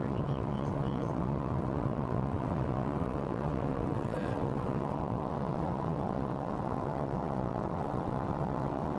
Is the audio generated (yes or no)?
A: yes